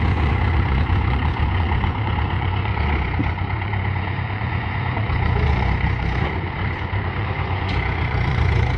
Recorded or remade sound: remade